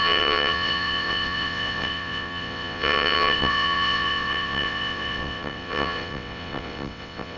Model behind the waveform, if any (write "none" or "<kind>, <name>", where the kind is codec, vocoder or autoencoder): vocoder, WaveNeXt